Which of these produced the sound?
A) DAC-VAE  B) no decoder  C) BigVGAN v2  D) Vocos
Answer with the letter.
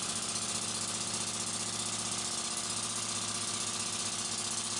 B